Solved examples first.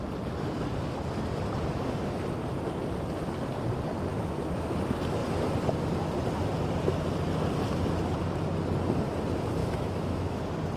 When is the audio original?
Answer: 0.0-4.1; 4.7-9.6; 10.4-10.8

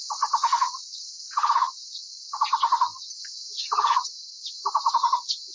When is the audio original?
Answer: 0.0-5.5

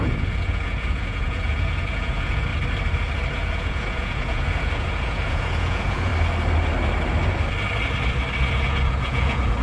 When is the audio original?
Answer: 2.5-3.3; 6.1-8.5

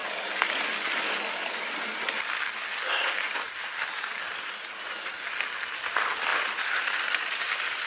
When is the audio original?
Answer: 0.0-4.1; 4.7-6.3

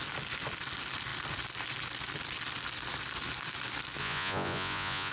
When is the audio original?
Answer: 0.0-4.0

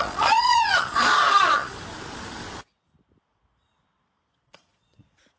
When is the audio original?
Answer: 1.7-4.3

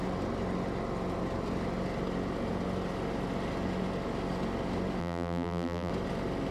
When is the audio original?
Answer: 0.0-5.0; 5.9-6.5

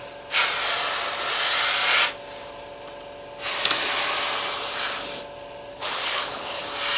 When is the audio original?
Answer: 0.0-5.7; 6.6-7.0